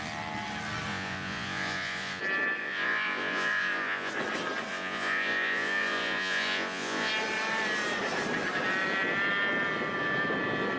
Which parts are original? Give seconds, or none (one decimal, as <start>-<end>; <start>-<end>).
0.0-0.9; 2.2-2.6; 4.1-4.7; 7.1-10.8